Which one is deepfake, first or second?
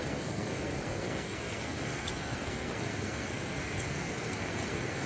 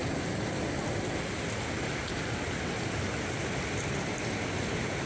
first